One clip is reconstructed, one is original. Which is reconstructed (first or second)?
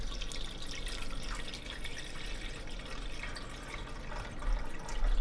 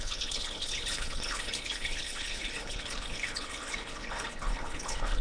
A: second